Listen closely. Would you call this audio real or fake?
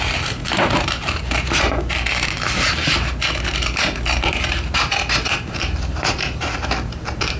fake